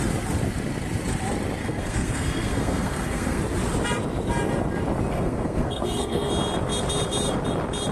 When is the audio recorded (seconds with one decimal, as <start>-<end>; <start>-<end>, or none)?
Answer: 0.0-1.6; 3.4-5.1; 6.3-7.9